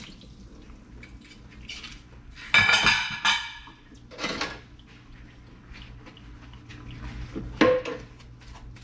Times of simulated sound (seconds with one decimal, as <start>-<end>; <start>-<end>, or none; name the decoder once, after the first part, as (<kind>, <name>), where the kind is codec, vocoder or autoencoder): none

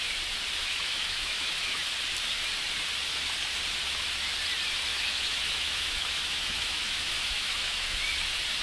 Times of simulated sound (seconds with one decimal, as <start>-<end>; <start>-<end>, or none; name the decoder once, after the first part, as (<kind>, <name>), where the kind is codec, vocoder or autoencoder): 0.6-1.9 (autoencoder, DAC-VAE); 4.9-8.0

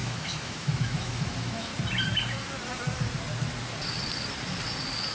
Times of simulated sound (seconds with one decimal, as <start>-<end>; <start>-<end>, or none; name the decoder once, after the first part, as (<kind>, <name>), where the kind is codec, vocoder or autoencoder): 0.0-1.7 (autoencoder, DAC-VAE)

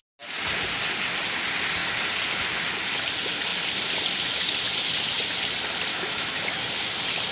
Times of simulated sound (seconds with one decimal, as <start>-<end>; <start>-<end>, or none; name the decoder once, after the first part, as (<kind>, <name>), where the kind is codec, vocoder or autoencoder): 5.9-6.6 (autoencoder, DAC-VAE)

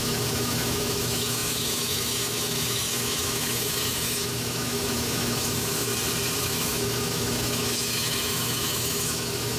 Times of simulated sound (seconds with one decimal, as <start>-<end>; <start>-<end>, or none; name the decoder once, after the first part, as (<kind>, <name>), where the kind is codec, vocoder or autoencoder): 0.0-5.9 (autoencoder, DAC-VAE); 6.4-9.6